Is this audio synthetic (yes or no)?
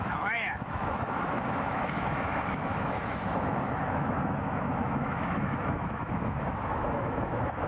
yes